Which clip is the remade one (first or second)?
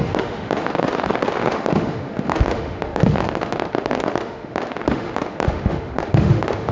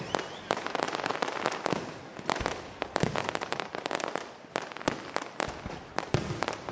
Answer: first